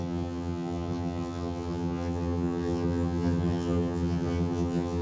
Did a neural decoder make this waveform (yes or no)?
yes